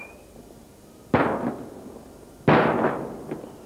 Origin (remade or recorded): recorded